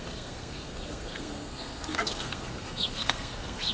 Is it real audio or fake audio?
fake